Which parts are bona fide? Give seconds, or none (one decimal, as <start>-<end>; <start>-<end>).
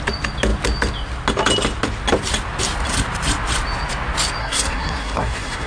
0.0-4.4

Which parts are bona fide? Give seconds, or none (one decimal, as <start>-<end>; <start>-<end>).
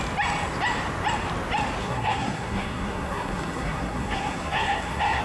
0.0-1.8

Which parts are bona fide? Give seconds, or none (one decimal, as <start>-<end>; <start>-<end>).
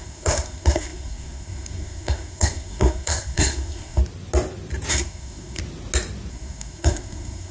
4.0-4.9; 5.6-6.3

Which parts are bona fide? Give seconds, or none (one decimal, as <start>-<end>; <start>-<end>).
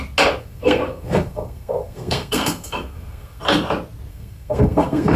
0.0-0.4; 3.4-4.1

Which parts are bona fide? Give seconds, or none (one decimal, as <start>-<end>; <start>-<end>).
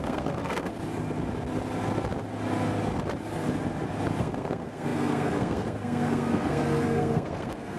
0.7-4.2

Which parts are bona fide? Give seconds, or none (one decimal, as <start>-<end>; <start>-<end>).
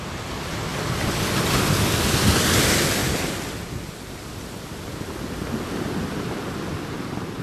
0.0-7.4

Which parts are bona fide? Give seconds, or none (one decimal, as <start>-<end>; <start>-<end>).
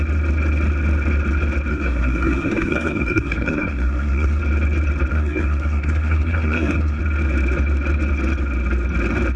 0.0-1.7; 4.4-5.1; 7.0-9.4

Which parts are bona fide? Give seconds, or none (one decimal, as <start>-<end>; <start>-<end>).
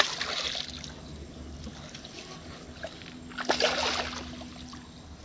0.0-5.2